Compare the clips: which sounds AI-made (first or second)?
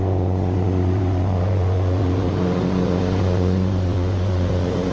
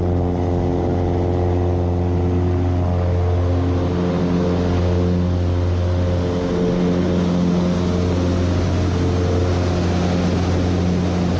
first